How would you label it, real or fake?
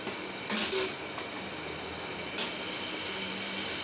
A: real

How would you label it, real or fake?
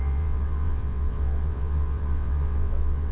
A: fake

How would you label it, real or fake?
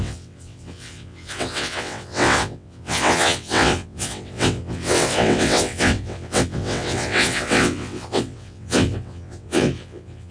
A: fake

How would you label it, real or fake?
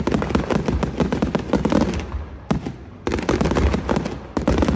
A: real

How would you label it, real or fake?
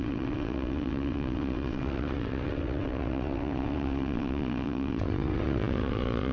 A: fake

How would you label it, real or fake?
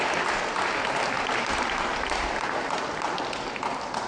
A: real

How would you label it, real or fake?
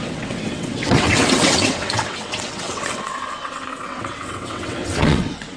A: fake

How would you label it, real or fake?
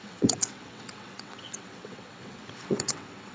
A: fake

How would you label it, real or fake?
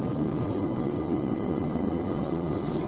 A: fake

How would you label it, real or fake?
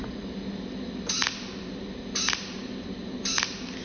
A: real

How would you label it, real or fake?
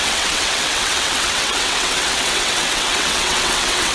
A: fake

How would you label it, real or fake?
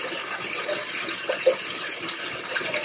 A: real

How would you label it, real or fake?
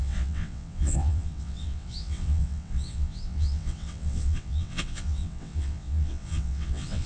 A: fake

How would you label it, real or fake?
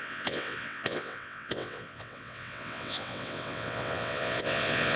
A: fake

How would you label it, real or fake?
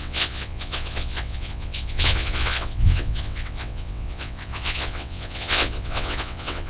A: fake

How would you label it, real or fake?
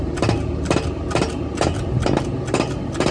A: real